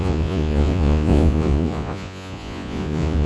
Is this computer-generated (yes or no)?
yes